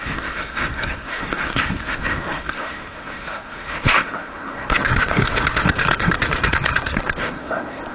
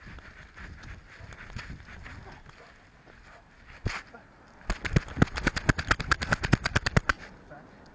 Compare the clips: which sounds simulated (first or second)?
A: first